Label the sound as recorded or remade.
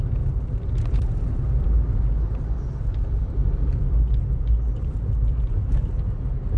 recorded